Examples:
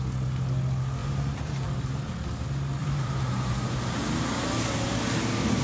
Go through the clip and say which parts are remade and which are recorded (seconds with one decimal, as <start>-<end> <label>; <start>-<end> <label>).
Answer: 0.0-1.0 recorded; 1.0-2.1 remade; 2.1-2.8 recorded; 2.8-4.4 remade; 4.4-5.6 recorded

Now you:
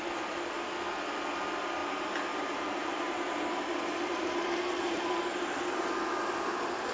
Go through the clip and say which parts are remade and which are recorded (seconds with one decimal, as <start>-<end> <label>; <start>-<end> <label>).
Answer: 0.0-1.8 recorded; 1.8-5.9 remade; 5.9-6.9 recorded

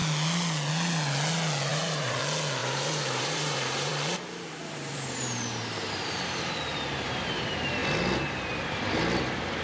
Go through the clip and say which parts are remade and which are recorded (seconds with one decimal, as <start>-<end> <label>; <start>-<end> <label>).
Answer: 0.0-1.7 recorded; 1.7-2.2 remade; 2.2-2.6 recorded; 2.6-6.5 remade; 6.5-9.6 recorded

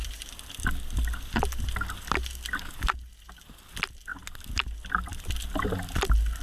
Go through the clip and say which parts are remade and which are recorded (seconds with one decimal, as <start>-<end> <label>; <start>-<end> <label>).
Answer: 0.0-1.4 remade; 1.4-6.4 recorded

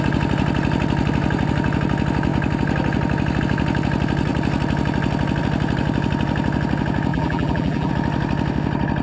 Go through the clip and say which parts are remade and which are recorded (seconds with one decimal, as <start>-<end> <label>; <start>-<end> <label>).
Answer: 0.0-7.1 recorded; 7.1-7.9 remade; 7.9-9.0 recorded

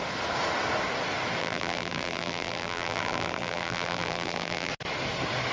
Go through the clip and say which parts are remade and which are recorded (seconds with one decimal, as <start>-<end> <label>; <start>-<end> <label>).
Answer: 0.0-1.4 recorded; 1.4-4.7 remade; 4.7-5.5 recorded

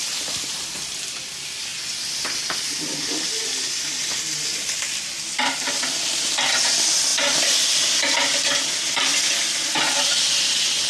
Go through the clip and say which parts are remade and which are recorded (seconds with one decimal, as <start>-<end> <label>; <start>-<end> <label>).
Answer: 0.0-0.6 remade; 0.6-10.9 recorded